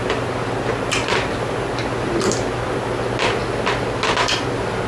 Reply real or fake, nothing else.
real